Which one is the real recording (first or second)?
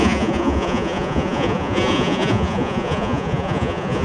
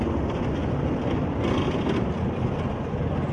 second